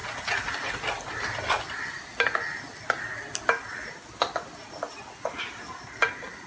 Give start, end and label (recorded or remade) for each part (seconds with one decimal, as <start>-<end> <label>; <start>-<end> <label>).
0.0-3.9 recorded; 3.9-6.5 remade